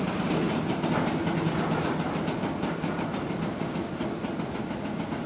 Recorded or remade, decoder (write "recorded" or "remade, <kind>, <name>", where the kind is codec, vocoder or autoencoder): recorded